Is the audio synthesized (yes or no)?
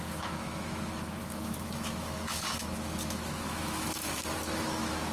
yes